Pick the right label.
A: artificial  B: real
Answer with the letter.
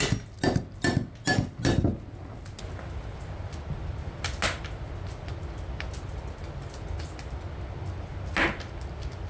B